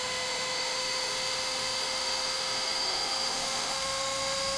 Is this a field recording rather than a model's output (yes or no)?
no